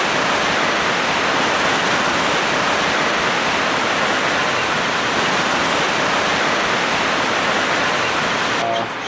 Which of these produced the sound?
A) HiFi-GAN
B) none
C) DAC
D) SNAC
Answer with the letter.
B